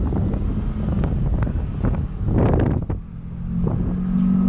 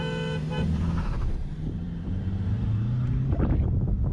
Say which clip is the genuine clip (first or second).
first